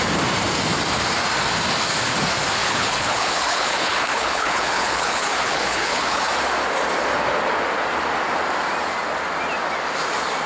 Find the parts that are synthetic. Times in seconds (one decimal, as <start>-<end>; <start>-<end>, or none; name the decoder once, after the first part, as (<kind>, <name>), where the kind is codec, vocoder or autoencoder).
2.6-6.3 (codec, HILCodec)